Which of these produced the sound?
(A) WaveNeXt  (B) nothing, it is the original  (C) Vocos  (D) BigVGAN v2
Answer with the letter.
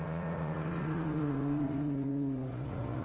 C